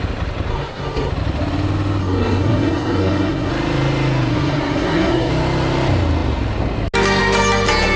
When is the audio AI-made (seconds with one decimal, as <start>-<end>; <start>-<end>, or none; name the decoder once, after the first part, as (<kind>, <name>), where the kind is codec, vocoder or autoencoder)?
0.5-1.1 (codec, SNAC); 2.0-3.5; 4.3-5.3